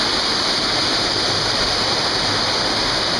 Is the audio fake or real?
real